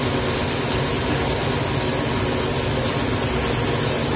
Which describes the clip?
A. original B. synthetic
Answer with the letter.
A